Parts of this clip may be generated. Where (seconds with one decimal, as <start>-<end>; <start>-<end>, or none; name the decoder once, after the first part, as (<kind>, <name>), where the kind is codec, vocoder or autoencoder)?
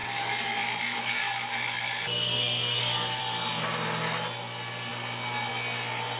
0.0-3.2 (codec, DAC)